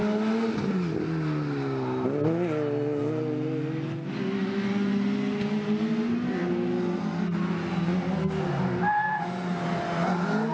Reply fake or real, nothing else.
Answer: real